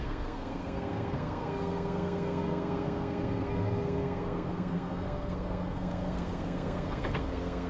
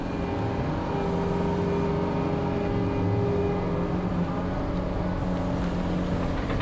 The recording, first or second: second